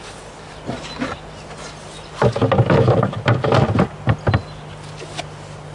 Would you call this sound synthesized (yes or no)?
no